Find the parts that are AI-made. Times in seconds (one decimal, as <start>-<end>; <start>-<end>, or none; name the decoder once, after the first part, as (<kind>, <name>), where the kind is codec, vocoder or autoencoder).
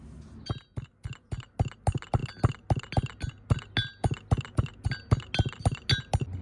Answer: none